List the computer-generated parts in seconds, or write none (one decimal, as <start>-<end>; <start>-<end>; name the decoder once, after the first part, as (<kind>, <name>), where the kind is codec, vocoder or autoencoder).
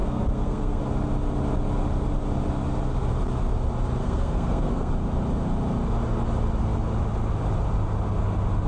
0.0-0.8 (codec, SNAC); 4.0-4.9